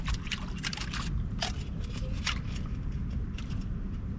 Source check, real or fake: real